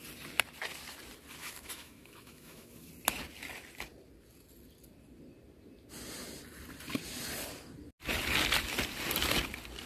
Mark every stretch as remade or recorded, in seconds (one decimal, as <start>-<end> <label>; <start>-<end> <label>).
0.0-1.4 recorded; 1.4-2.9 remade; 2.9-9.9 recorded